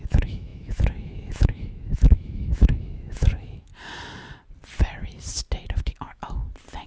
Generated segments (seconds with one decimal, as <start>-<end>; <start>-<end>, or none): 0.0-3.7; 5.8-6.4